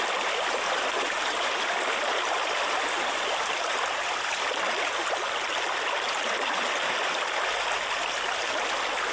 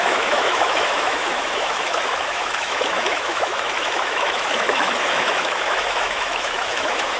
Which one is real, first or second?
first